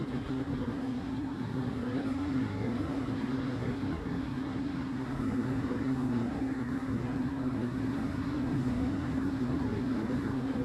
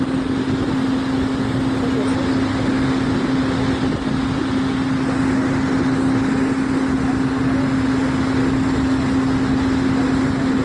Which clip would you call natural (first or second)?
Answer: second